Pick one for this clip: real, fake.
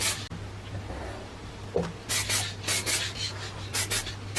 real